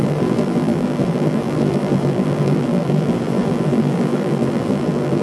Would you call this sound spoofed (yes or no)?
yes